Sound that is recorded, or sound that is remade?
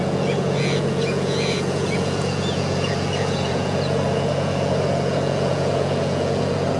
remade